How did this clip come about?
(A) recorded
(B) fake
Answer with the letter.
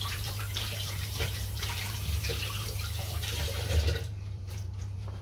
B